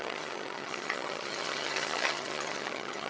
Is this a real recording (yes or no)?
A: no